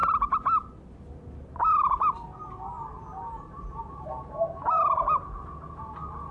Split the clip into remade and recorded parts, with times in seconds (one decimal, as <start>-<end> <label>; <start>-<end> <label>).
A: 0.0-3.8 remade; 3.8-6.3 recorded